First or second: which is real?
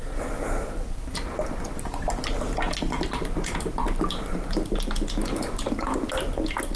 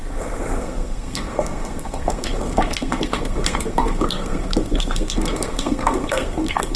first